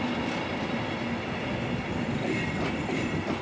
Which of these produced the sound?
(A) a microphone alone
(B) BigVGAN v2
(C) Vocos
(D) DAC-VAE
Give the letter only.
A